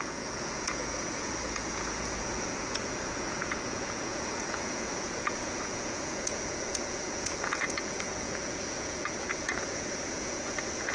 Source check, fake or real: fake